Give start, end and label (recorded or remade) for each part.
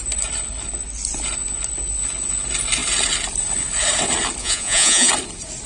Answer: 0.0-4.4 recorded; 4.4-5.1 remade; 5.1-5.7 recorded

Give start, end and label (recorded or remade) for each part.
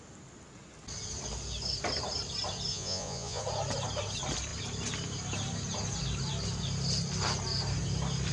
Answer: 0.0-2.7 recorded; 2.7-3.4 remade; 3.4-8.3 recorded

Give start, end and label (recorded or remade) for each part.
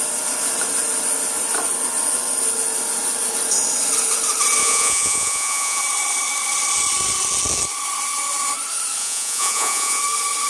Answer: 0.0-4.6 recorded; 4.6-5.8 remade; 5.8-9.0 recorded; 9.0-10.0 remade; 10.0-10.5 recorded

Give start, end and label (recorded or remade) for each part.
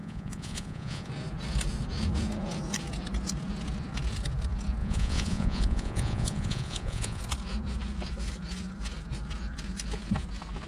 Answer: 0.0-1.1 remade; 1.1-4.8 recorded; 4.8-7.2 remade; 7.2-10.7 recorded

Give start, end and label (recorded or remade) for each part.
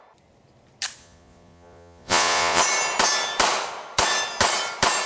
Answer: 0.0-1.0 recorded; 1.0-2.6 remade; 2.6-5.1 recorded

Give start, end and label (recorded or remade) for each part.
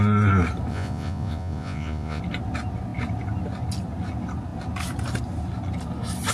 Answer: 0.0-0.7 recorded; 0.7-2.2 remade; 2.2-6.3 recorded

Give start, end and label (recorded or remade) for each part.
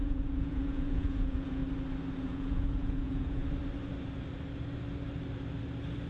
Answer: 0.0-1.6 remade; 1.6-2.2 recorded; 2.2-3.4 remade; 3.4-6.1 recorded